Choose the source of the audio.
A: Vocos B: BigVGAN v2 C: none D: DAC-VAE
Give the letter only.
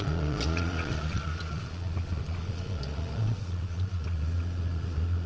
A